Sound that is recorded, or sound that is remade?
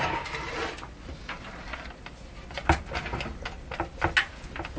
recorded